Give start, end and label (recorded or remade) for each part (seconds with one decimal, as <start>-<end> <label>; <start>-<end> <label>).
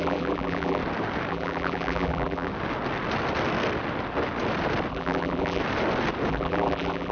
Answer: 0.0-0.8 remade; 0.8-1.3 recorded; 1.3-2.5 remade; 2.5-4.9 recorded; 4.9-5.6 remade; 5.6-6.3 recorded; 6.3-7.1 remade